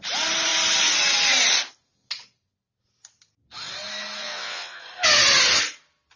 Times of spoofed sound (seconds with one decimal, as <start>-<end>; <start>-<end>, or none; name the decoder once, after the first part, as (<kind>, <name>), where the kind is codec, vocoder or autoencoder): 4.2-4.8 (vocoder, WaveNeXt)